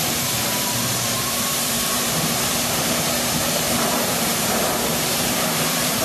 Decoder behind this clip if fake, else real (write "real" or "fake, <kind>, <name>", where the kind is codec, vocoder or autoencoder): fake, vocoder, BigVGAN v2